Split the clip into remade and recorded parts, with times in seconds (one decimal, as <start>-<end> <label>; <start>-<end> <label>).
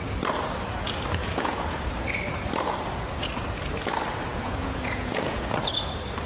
0.0-1.2 recorded; 1.2-1.9 remade; 1.9-4.3 recorded; 4.3-5.4 remade; 5.4-6.3 recorded